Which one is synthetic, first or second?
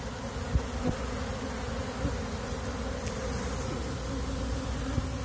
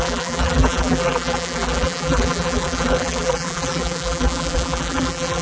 second